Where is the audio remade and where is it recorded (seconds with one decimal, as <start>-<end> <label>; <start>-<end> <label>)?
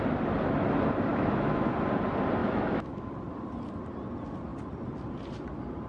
0.0-1.1 recorded; 1.1-1.7 remade; 1.7-2.4 recorded; 2.4-3.1 remade; 3.1-5.9 recorded